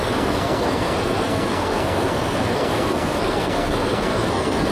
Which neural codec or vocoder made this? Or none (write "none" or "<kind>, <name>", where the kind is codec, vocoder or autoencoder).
codec, SNAC